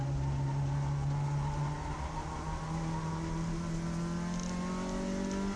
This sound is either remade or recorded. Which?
recorded